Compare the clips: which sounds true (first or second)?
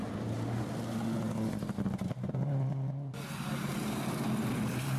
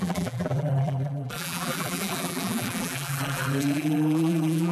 first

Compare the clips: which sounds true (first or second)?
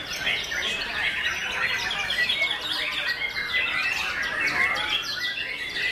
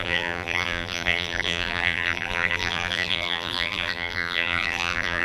first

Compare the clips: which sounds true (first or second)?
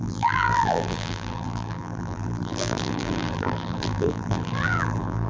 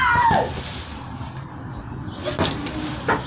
second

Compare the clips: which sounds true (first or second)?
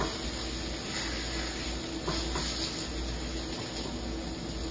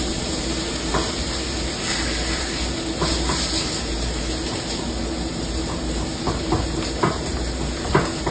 first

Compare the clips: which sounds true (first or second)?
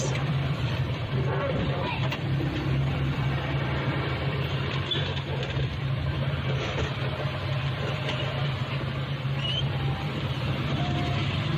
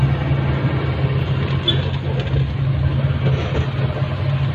second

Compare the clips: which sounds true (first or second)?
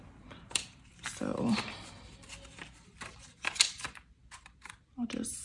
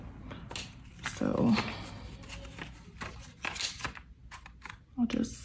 second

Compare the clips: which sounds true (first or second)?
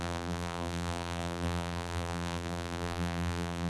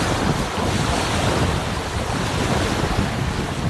second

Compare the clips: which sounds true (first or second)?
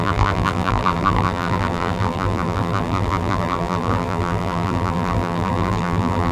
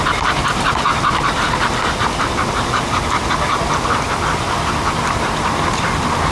second